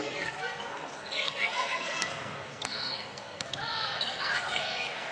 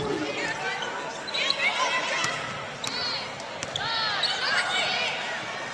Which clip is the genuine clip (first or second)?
second